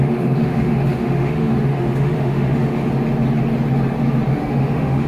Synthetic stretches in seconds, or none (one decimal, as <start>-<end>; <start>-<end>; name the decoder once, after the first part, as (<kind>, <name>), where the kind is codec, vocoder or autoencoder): 0.0-2.9 (autoencoder, DAC-VAE); 4.3-5.1